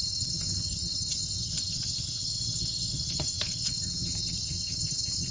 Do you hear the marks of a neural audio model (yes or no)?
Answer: yes